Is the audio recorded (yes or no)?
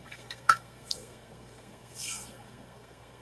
no